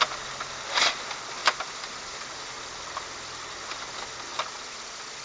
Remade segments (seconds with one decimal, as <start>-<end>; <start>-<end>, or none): 1.4-2.5; 4.3-4.8